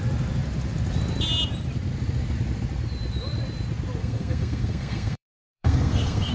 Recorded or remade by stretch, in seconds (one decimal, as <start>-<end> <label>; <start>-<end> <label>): 0.0-4.0 recorded; 4.0-6.3 remade